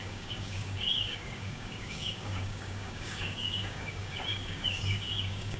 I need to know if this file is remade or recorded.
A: remade